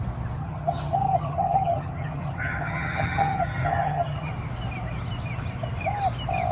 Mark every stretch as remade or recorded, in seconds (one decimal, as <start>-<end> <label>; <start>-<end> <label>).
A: 0.0-0.4 recorded; 0.4-4.3 remade; 4.3-6.5 recorded